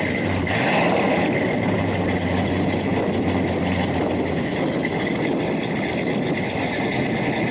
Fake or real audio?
real